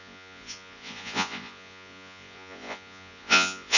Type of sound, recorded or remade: remade